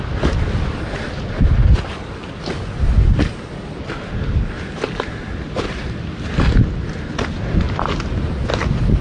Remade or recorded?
recorded